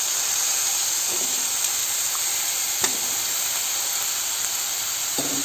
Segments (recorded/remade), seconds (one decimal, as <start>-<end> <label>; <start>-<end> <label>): 0.0-1.8 remade; 1.8-4.2 recorded; 4.2-5.4 remade